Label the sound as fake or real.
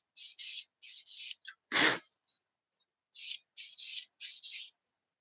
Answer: real